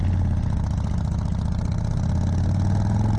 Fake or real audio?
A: real